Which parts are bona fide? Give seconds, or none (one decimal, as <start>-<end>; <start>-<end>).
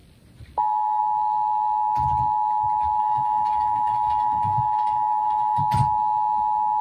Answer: 0.0-0.6; 1.0-3.0; 5.6-6.8